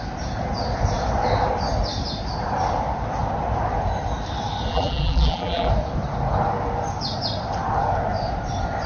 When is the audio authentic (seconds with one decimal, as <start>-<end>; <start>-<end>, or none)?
0.0-4.7; 5.7-8.9